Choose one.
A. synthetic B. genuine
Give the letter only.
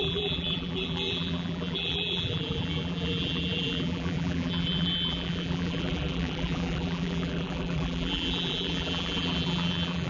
A